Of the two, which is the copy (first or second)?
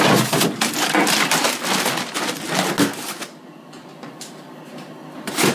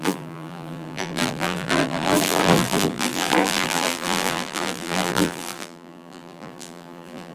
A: second